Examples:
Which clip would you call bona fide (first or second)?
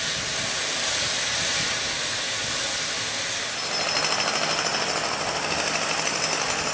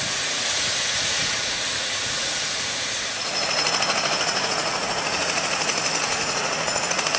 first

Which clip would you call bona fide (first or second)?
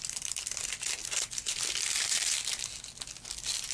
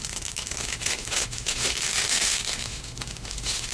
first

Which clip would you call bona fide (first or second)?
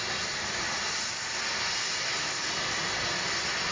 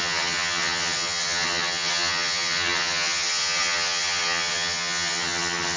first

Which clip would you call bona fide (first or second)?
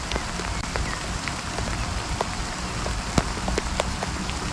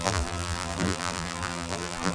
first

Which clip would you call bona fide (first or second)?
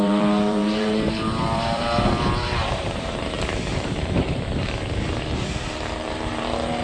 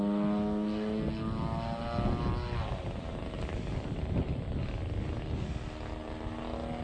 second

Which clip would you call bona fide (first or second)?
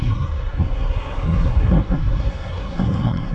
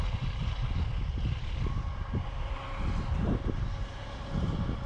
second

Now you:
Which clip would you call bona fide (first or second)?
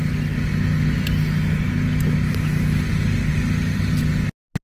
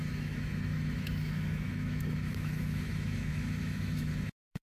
first